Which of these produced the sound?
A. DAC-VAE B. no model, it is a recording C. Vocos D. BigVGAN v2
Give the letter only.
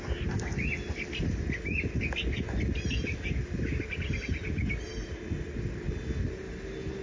B